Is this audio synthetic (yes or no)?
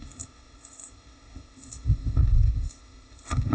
yes